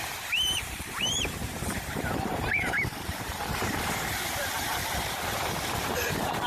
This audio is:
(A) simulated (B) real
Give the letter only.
A